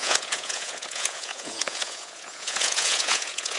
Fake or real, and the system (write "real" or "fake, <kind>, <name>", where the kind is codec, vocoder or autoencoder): fake, vocoder, Vocos